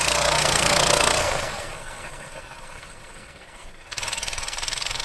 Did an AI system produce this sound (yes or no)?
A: yes